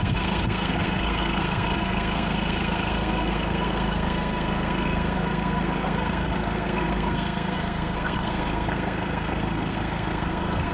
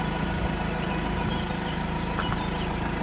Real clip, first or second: second